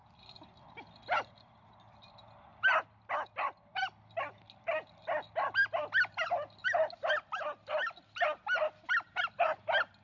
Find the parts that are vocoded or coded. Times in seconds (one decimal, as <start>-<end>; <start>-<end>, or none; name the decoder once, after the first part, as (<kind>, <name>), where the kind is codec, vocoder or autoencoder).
none